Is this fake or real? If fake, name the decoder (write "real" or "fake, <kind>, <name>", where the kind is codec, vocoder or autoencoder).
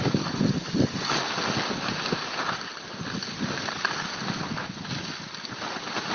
real